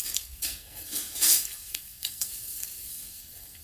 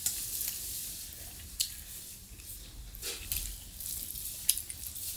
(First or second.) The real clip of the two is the second